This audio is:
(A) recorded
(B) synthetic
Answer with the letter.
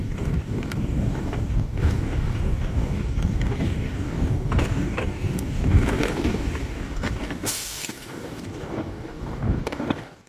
B